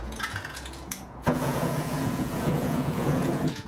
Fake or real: fake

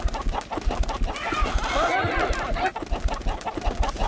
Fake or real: real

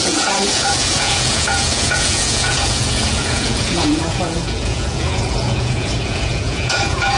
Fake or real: fake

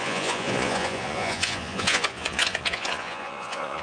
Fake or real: fake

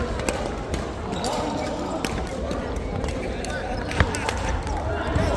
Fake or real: real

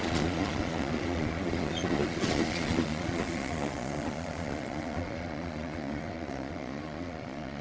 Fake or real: fake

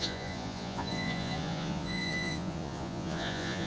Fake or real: fake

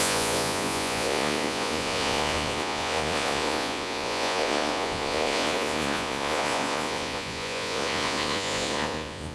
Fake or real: fake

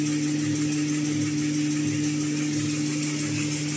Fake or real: real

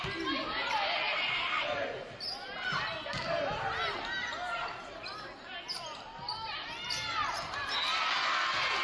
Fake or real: real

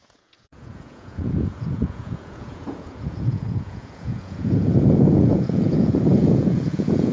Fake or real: fake